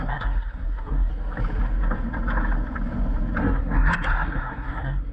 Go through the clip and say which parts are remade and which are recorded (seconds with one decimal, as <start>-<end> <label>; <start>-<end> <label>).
0.0-1.1 remade; 1.1-3.4 recorded; 3.4-5.1 remade